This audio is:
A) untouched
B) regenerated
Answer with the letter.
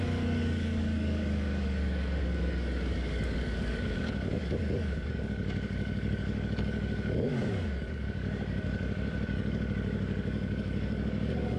B